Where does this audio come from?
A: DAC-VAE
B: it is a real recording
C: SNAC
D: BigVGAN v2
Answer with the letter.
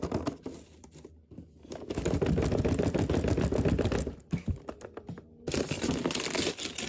B